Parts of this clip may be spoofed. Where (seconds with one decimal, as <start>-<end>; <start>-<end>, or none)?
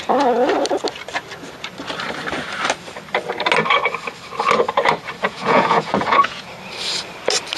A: 5.2-6.5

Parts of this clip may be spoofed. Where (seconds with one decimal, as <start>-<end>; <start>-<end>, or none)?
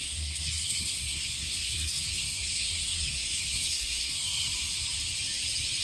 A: 0.0-4.5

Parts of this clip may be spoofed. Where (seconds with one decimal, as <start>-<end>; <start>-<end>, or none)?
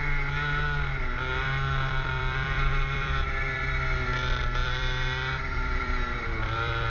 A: 1.4-3.6; 4.6-6.9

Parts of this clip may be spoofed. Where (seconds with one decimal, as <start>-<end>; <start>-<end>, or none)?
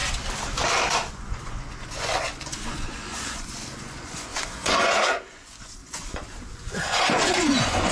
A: 1.1-7.9